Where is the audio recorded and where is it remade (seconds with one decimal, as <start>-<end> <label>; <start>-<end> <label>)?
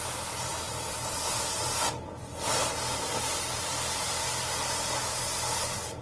0.0-0.5 recorded; 0.5-4.1 remade; 4.1-6.0 recorded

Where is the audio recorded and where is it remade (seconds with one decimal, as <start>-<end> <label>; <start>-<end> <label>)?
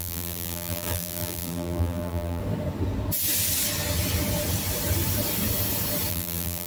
0.0-2.4 remade; 2.4-6.1 recorded; 6.1-6.7 remade